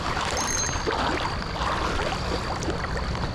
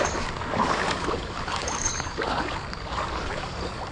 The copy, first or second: second